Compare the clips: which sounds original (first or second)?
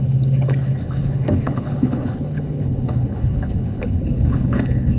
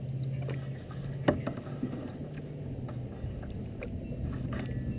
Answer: second